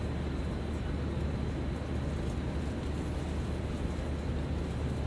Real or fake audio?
real